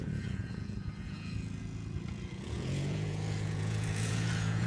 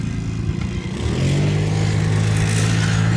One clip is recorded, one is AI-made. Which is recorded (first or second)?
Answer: second